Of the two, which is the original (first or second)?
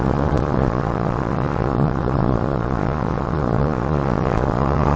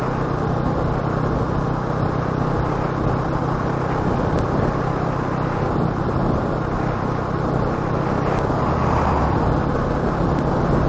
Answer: second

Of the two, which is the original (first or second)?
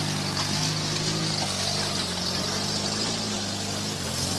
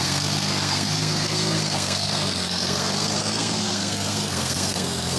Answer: first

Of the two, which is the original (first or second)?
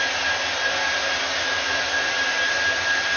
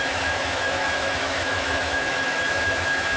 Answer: first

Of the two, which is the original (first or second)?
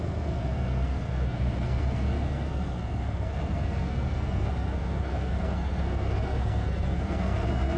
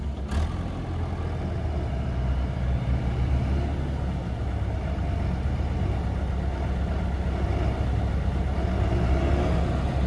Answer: second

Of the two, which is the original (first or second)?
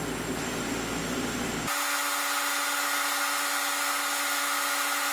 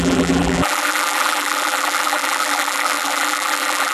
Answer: first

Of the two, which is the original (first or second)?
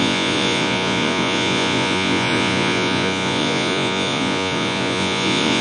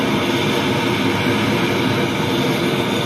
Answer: second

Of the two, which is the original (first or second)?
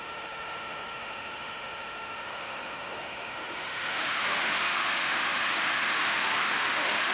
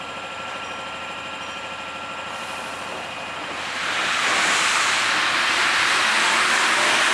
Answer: second